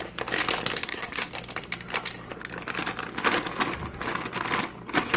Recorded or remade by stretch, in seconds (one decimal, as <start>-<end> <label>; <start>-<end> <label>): 0.0-0.8 recorded; 0.8-1.3 remade; 1.3-5.2 recorded